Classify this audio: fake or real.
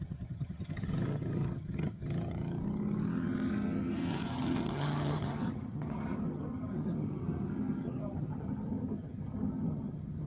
fake